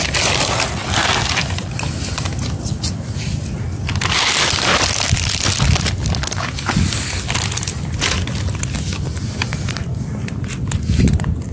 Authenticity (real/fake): real